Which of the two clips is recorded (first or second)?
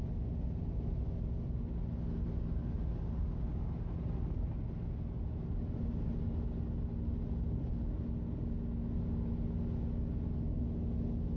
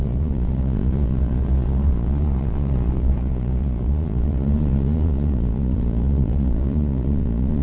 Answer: first